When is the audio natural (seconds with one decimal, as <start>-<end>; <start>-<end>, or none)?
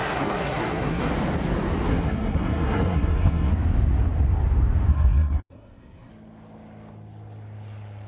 1.1-1.9; 3.5-4.9; 6.1-8.1